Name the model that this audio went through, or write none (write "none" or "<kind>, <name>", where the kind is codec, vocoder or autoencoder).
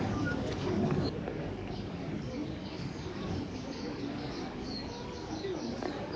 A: codec, DAC